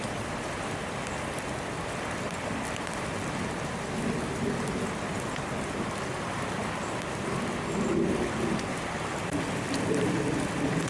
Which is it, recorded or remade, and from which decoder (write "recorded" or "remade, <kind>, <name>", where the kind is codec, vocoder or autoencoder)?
recorded